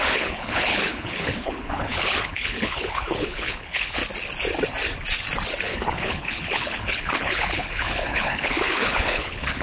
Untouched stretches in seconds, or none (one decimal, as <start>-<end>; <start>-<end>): 4.0-5.6